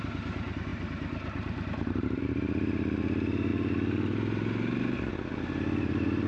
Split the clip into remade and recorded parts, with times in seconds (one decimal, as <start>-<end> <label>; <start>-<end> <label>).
0.0-0.7 recorded; 0.7-2.2 remade; 2.2-3.5 recorded; 3.5-5.1 remade; 5.1-6.3 recorded